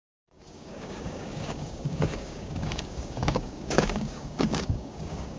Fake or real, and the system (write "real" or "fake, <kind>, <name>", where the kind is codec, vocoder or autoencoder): fake, codec, DAC